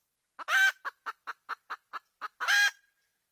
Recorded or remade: recorded